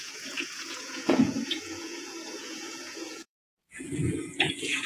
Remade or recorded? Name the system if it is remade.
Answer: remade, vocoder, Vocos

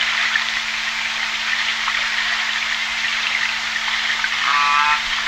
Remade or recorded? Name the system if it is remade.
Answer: recorded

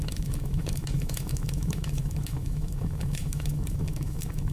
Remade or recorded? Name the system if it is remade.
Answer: remade, autoencoder, DAC-VAE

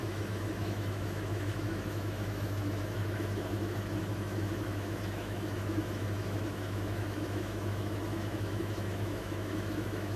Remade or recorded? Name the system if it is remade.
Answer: remade, autoencoder, DAC-VAE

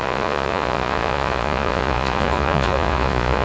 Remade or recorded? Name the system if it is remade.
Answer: remade, vocoder, Vocos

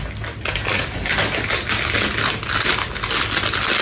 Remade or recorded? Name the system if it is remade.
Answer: recorded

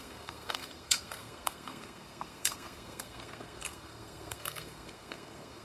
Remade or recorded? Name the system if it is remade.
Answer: remade, codec, SNAC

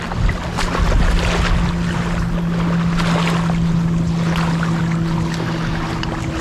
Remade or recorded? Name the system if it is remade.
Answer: recorded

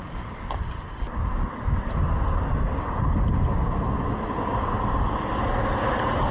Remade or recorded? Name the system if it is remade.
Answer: recorded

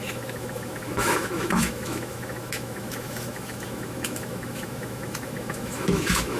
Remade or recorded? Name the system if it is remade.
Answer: remade, autoencoder, DAC-VAE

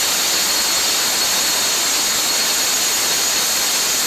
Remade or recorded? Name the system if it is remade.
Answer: recorded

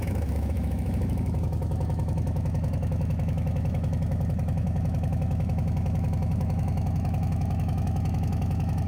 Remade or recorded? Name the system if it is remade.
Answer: remade, autoencoder, DAC-VAE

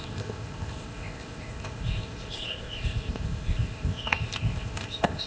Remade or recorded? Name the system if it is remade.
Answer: remade, codec, ZipCodec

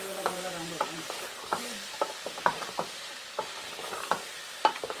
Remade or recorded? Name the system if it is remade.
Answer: recorded